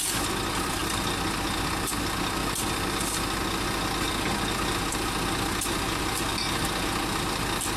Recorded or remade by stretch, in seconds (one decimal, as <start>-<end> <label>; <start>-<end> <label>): 0.0-2.4 recorded; 2.4-3.4 remade; 3.4-7.8 recorded